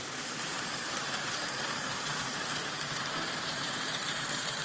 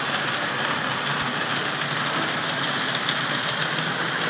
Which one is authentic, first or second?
second